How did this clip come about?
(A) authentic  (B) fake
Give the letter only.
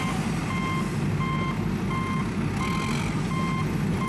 A